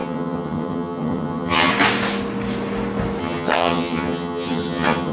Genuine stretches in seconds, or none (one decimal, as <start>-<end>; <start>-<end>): 1.7-3.2